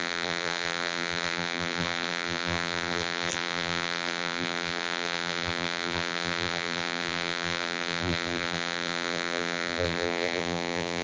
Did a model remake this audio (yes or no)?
yes